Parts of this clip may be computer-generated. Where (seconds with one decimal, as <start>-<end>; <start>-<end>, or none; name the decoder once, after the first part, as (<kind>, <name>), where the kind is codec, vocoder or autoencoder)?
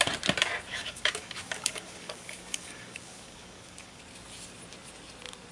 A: 0.7-4.0 (codec, DAC)